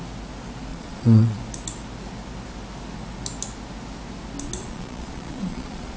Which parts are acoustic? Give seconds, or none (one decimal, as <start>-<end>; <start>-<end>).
0.0-0.7; 1.4-4.6

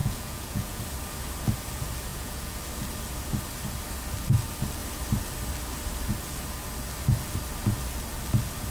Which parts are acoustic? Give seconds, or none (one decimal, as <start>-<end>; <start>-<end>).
0.8-2.1; 2.6-8.7

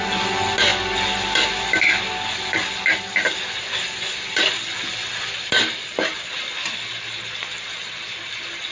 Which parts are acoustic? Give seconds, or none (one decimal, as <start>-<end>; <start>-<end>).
0.0-8.7

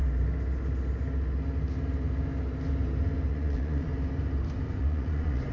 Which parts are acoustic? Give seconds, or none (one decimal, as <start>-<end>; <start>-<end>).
0.0-3.3; 3.9-4.6